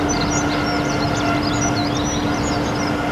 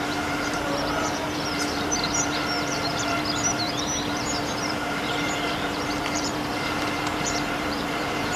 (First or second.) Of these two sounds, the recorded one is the first